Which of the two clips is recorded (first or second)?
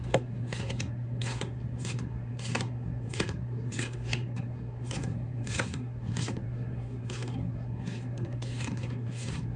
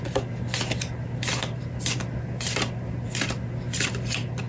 second